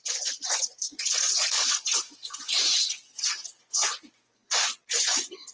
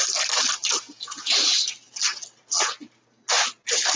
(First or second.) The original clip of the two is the second